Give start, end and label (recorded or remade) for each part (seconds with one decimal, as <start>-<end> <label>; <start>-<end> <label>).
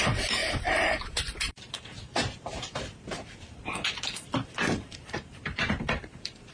0.0-6.5 remade